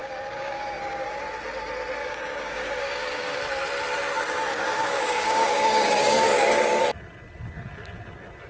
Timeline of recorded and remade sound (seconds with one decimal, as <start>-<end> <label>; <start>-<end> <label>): 0.0-1.2 remade; 1.2-2.0 recorded; 2.0-3.4 remade; 3.4-4.5 recorded; 4.5-6.8 remade; 6.8-8.5 recorded